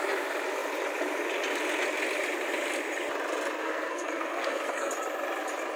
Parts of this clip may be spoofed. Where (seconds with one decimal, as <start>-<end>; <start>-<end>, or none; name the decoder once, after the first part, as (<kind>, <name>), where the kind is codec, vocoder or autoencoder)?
3.6-4.9 (codec, SNAC)